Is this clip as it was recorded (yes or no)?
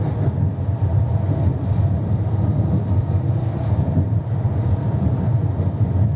no